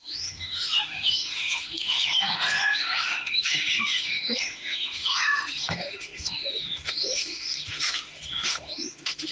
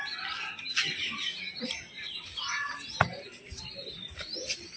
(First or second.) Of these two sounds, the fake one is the first